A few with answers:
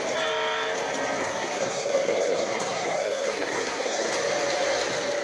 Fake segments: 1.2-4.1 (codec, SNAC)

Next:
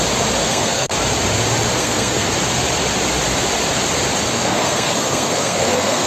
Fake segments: 0.4-0.9 (codec, SNAC); 1.8-2.3; 4.3-6.1

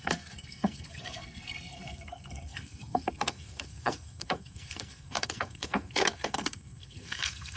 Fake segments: 0.0-7.6 (codec, SNAC)

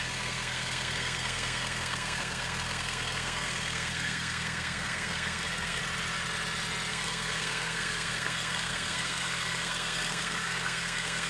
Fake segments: 0.0-5.8 (codec, SNAC); 6.9-11.3